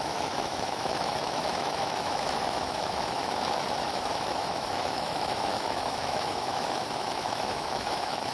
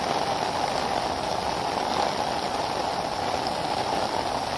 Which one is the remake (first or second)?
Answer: first